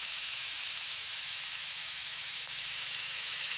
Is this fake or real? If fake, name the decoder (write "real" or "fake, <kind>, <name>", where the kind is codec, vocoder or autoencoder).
fake, autoencoder, DAC-VAE